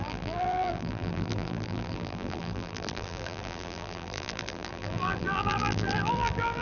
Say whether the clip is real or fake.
fake